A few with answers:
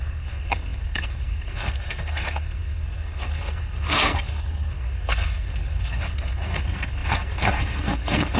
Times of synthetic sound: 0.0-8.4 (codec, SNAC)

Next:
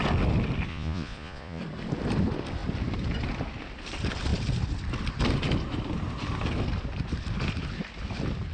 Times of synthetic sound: 0.7-1.6 (vocoder, Vocos)

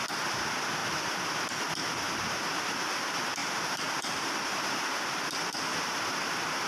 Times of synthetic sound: 3.4-5.3 (vocoder, BigVGAN v2)

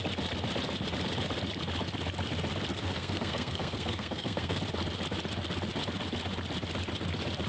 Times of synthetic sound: 2.7-4.6 (codec, SNAC)

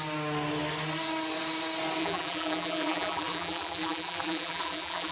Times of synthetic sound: 2.0-5.1 (vocoder, BigVGAN v2)

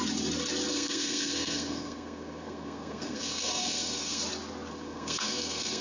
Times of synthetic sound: 0.7-4.2 (codec, SNAC); 4.7-5.8

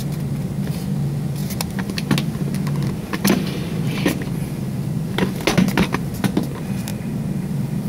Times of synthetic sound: none

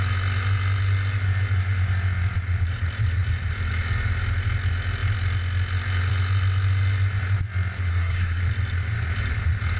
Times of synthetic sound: 7.9-8.4 (codec, SNAC)